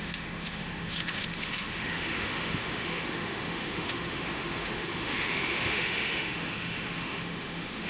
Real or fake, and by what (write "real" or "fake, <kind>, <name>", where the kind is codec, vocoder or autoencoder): fake, autoencoder, DAC-VAE